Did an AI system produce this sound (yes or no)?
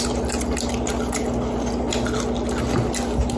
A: no